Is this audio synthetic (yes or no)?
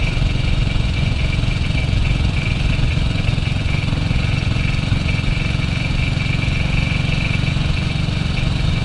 yes